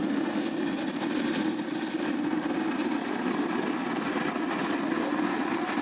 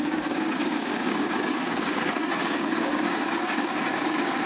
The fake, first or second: second